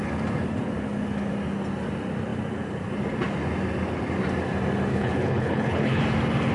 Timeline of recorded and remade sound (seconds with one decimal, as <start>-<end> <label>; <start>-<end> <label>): 0.0-4.9 recorded; 4.9-6.0 remade; 6.0-6.5 recorded

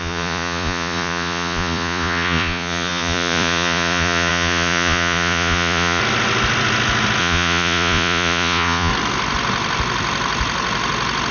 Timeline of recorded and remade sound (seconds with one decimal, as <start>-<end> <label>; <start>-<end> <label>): 0.0-6.0 remade; 6.0-7.2 recorded; 7.2-8.9 remade; 8.9-11.3 recorded

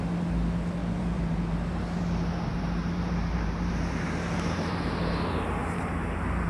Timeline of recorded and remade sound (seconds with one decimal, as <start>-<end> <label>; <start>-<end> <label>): 0.0-0.8 recorded; 0.8-2.0 remade; 2.0-2.5 recorded; 2.5-5.1 remade; 5.1-5.6 recorded; 5.6-6.5 remade

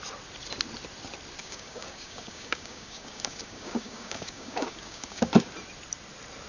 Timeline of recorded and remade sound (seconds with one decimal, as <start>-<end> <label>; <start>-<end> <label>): 0.0-1.4 recorded; 1.4-5.3 remade; 5.3-6.5 recorded

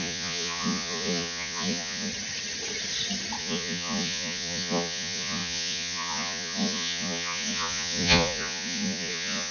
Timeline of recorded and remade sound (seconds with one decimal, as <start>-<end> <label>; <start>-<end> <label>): 0.0-2.1 remade; 2.1-3.4 recorded; 3.4-9.5 remade

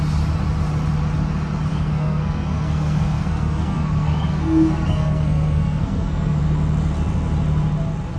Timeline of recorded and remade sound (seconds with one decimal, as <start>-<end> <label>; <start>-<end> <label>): 0.0-1.7 recorded; 1.7-6.4 remade; 6.4-8.2 recorded